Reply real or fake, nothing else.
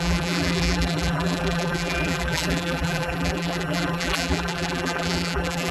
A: fake